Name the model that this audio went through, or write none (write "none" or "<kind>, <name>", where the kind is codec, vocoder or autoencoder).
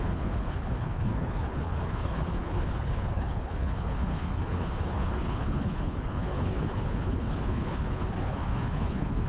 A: codec, HILCodec